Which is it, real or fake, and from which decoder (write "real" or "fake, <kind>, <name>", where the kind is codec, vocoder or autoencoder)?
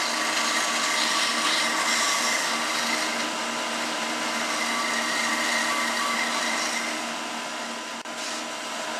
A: real